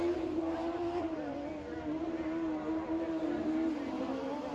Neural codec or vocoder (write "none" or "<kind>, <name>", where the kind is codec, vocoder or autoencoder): vocoder, BigVGAN v2